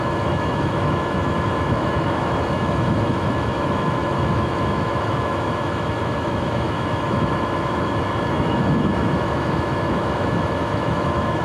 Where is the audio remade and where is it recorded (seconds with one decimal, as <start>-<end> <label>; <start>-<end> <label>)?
0.0-11.4 remade